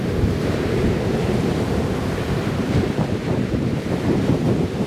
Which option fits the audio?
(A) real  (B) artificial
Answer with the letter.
B